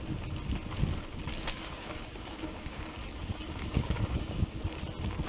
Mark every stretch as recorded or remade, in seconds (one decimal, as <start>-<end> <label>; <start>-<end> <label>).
0.0-1.3 recorded; 1.3-4.5 remade; 4.5-5.3 recorded